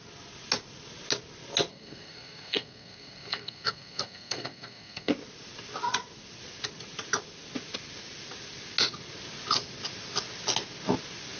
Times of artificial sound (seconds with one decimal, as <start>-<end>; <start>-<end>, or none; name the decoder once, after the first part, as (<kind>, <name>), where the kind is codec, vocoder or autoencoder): 1.7-5.1 (codec, SNAC)